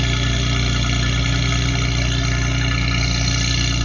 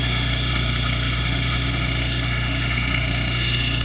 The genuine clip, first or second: first